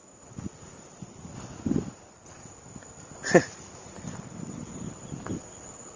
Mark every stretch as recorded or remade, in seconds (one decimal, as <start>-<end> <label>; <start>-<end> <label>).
0.0-6.0 recorded